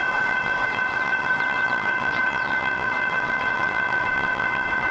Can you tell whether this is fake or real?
fake